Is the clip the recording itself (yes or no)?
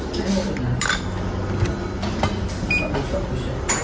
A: yes